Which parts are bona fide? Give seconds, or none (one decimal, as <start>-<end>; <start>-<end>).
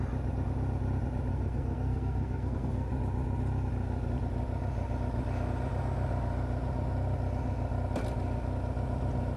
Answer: 0.0-1.3; 2.9-9.4